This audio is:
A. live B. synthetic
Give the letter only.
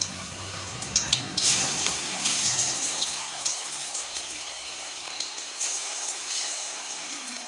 B